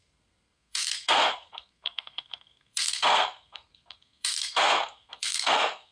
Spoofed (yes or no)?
yes